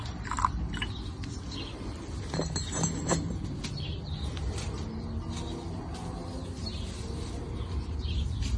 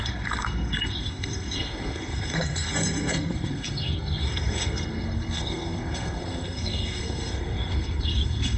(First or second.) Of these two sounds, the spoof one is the second